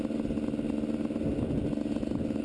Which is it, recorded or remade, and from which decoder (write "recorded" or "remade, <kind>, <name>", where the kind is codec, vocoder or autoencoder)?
recorded